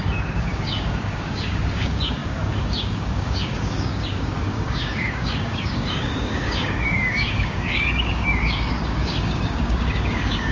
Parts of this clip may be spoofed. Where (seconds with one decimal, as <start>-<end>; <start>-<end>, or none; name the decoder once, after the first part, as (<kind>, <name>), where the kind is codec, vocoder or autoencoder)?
0.0-10.5 (codec, DAC)